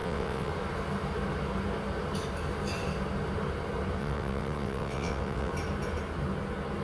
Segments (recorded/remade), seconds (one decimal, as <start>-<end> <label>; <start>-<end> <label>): 0.0-0.5 remade; 0.5-4.0 recorded; 4.0-5.5 remade; 5.5-6.8 recorded